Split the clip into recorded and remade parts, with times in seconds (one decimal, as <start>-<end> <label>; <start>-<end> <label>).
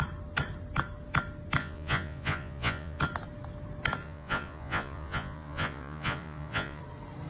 0.0-1.6 recorded; 1.6-3.0 remade; 3.0-4.0 recorded; 4.0-6.8 remade; 6.8-7.3 recorded